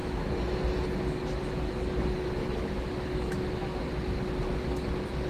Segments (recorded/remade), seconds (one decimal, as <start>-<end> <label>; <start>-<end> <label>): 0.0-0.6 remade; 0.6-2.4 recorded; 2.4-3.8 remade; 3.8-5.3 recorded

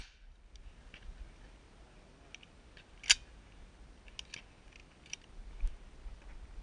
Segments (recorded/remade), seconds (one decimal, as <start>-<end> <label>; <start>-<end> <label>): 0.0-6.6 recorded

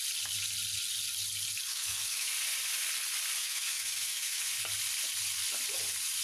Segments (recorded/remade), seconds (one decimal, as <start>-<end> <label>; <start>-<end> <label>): 0.0-1.7 recorded; 1.7-2.3 remade; 2.3-3.4 recorded; 3.4-4.6 remade; 4.6-6.2 recorded

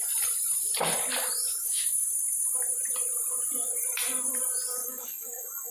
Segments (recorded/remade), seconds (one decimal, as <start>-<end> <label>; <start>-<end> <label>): 0.0-1.5 recorded; 1.5-2.1 remade; 2.1-4.8 recorded; 4.8-5.7 remade

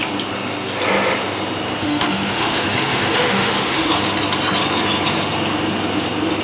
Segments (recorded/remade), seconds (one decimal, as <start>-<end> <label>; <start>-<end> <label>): 0.0-1.8 recorded; 1.8-3.9 remade; 3.9-6.4 recorded

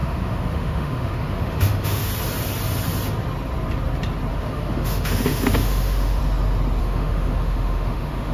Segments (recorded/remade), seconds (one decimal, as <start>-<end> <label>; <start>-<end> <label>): 0.0-2.1 remade; 2.1-4.3 recorded; 4.3-6.2 remade; 6.2-6.8 recorded; 6.8-8.3 remade

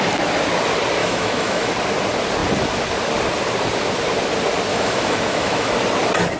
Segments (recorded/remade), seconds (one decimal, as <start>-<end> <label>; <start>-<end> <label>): 0.0-1.0 recorded; 1.0-1.7 remade; 1.7-4.7 recorded; 4.7-5.7 remade; 5.7-6.4 recorded